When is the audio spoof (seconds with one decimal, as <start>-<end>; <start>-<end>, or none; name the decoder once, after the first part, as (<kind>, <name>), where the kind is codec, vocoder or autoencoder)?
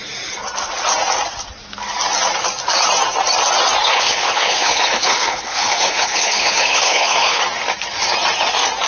3.9-7.4 (codec, HILCodec)